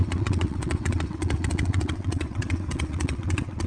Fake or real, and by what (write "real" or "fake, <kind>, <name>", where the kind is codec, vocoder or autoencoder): fake, vocoder, WaveNeXt